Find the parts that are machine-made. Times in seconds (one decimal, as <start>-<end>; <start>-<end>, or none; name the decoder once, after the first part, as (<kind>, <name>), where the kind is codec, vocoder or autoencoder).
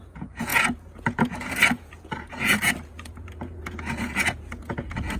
0.0-5.2 (vocoder, Vocos)